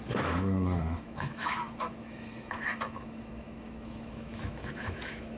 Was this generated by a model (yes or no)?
yes